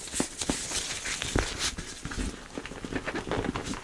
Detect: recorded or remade recorded